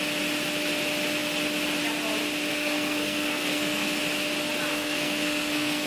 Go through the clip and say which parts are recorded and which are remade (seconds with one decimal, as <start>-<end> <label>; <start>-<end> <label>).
0.0-2.5 recorded; 2.5-4.0 remade; 4.0-4.7 recorded; 4.7-5.9 remade

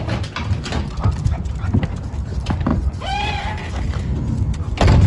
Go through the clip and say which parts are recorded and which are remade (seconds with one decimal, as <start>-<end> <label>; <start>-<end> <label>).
0.0-2.7 recorded; 2.7-3.5 remade; 3.5-5.1 recorded

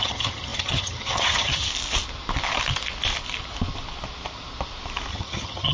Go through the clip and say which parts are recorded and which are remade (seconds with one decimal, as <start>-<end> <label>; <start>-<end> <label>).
0.0-1.7 remade; 1.7-5.1 recorded; 5.1-5.7 remade

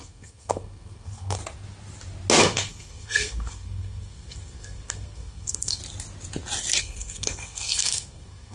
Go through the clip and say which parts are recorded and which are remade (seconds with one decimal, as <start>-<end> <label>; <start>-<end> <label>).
0.0-1.4 remade; 1.4-2.4 recorded; 2.4-5.8 remade; 5.8-6.8 recorded; 6.8-8.5 remade